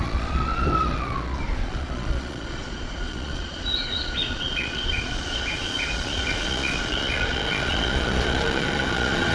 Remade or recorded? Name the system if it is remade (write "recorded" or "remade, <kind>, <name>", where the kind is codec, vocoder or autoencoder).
remade, vocoder, Vocos